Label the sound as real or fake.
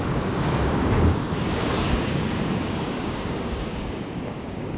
fake